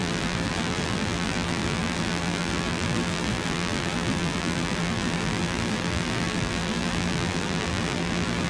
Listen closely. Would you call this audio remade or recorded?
remade